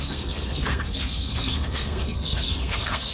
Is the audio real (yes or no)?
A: no